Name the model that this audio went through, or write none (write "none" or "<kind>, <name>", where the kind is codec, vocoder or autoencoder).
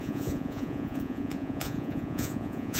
vocoder, Vocos